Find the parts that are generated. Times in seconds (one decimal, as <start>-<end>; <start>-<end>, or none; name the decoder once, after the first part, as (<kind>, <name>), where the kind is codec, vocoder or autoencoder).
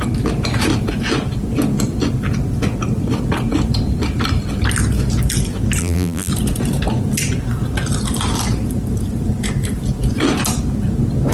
5.8-6.3 (vocoder, BigVGAN v2)